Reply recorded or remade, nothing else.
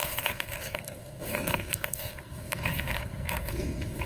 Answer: remade